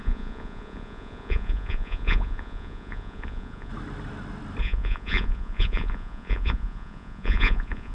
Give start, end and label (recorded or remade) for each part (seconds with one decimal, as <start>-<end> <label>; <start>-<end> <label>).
0.0-3.7 remade; 3.7-4.6 recorded; 4.6-7.9 remade